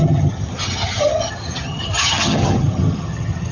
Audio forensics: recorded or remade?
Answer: remade